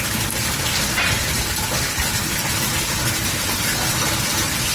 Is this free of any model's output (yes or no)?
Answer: yes